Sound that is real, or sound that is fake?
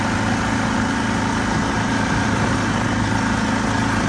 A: real